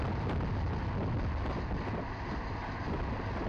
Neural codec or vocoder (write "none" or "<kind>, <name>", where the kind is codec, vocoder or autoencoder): none